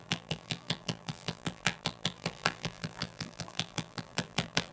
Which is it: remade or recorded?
remade